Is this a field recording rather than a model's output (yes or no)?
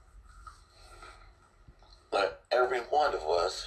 yes